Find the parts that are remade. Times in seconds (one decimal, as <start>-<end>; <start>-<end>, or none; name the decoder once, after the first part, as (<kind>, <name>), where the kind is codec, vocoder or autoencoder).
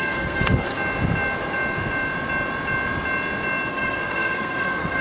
0.0-0.7 (codec, SNAC); 3.7-5.0